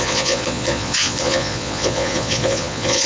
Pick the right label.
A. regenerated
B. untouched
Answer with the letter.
A